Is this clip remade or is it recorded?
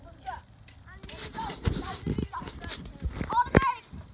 recorded